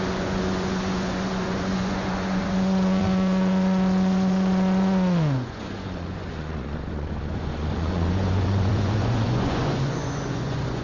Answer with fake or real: fake